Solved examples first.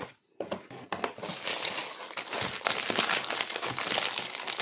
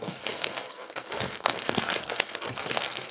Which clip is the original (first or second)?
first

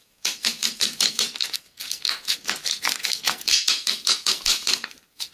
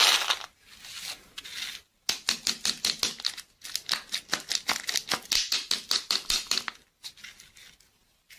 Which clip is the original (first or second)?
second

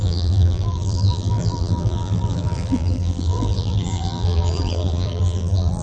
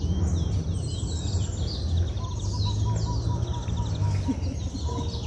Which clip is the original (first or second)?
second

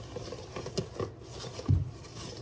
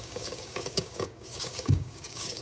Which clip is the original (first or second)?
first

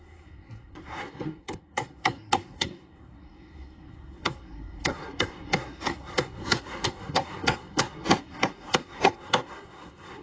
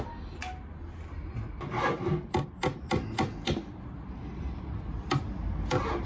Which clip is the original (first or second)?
second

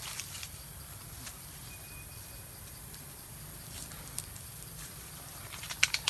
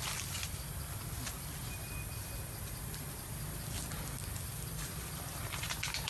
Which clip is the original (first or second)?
second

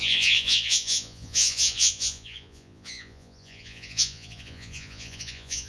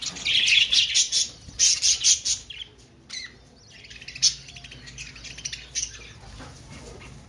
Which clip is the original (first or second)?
second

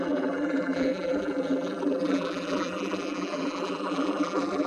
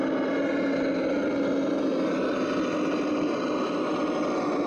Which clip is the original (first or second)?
second